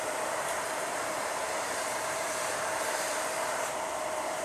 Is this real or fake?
fake